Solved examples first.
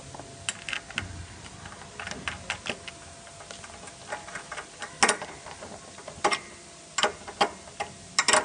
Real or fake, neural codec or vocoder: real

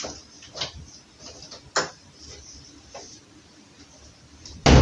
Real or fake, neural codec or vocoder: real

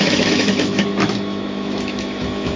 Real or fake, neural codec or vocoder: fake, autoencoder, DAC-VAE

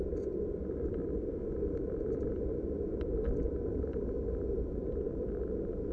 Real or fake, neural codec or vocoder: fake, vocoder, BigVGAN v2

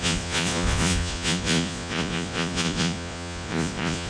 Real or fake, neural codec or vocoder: fake, vocoder, Vocos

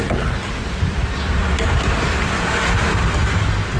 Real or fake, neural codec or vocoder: fake, vocoder, BigVGAN v2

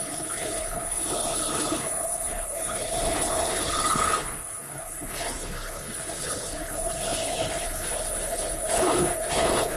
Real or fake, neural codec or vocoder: fake, codec, HILCodec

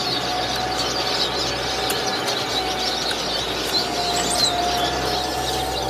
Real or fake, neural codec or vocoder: real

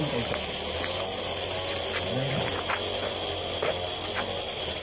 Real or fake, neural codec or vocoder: real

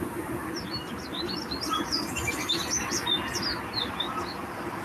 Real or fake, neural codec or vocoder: real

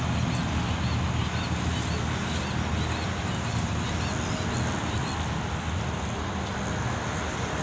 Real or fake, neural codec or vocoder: real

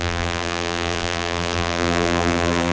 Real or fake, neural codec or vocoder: fake, vocoder, BigVGAN v2